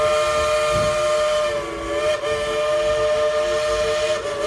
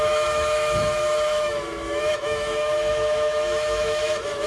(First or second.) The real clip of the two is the first